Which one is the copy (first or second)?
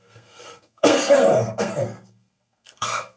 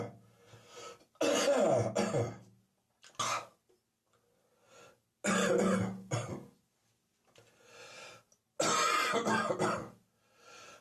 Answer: first